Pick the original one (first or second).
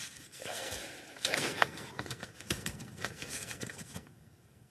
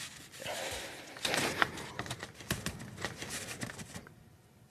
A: second